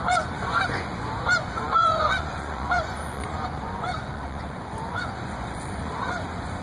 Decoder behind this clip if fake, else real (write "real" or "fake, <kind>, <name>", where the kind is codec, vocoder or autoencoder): fake, vocoder, Vocos